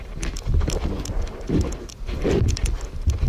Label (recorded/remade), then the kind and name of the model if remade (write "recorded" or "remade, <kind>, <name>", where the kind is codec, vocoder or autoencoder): recorded